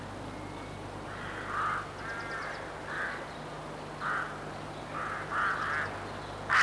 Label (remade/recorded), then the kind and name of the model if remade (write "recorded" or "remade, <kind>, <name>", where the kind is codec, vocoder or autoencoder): recorded